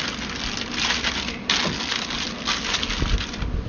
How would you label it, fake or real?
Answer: real